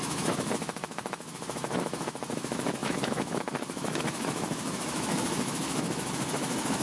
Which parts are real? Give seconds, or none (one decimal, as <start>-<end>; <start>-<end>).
none